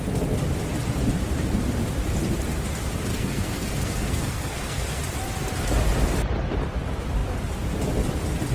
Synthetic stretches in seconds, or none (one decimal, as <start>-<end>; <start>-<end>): 3.1-5.0